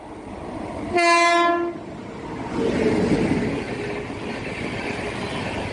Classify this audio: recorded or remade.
recorded